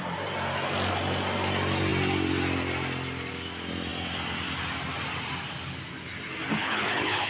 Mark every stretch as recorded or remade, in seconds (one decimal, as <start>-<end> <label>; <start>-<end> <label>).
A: 0.0-6.6 recorded; 6.6-7.3 remade